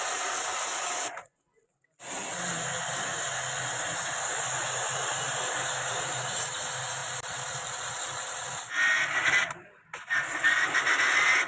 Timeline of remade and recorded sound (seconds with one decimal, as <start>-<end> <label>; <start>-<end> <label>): 0.0-0.5 recorded; 0.5-1.8 remade; 1.8-11.5 recorded